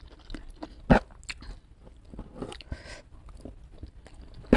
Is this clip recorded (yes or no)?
yes